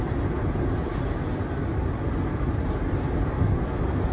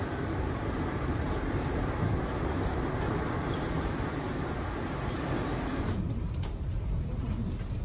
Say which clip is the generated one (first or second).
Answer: second